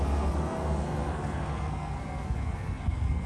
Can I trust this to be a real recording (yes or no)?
no